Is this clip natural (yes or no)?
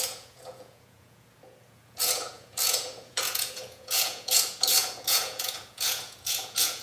no